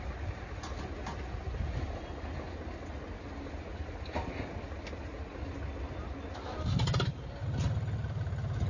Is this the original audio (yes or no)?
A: yes